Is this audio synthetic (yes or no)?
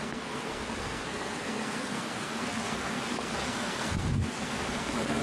yes